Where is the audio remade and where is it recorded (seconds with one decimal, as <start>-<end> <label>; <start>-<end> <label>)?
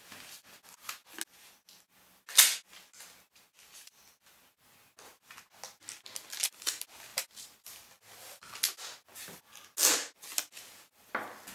0.0-11.5 recorded